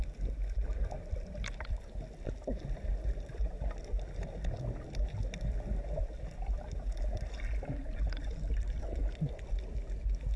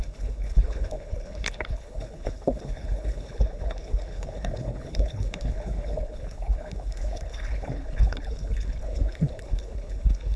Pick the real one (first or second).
first